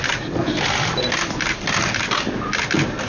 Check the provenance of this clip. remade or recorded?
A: recorded